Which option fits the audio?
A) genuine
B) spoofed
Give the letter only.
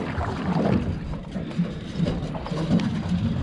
A